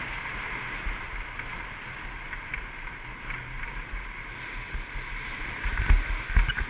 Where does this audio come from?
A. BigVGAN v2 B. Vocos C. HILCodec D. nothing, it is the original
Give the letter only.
D